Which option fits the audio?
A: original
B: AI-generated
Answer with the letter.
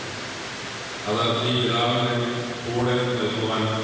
A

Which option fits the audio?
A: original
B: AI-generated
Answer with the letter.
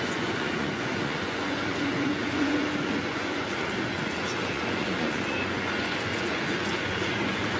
B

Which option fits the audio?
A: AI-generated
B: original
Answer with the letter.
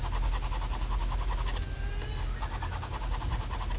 B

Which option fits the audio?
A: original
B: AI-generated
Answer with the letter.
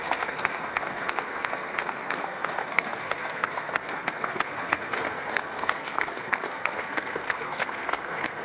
B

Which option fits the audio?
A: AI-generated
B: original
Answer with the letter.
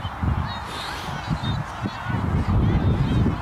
B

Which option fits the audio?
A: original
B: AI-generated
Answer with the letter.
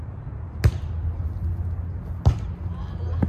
A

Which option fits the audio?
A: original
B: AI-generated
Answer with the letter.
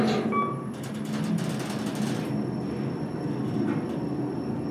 A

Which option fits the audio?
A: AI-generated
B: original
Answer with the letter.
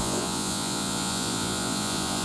A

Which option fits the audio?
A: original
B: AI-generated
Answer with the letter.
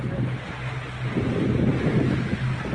A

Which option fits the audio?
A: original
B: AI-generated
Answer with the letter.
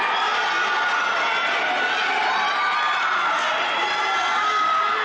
A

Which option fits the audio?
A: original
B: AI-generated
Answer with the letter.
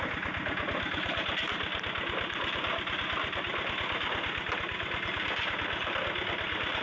A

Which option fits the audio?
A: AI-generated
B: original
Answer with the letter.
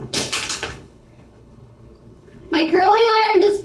A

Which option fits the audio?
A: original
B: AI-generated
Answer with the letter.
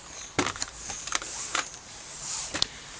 B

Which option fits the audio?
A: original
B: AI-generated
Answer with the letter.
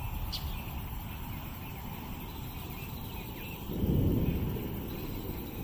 A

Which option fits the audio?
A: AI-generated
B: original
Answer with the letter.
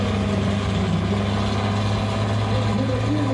B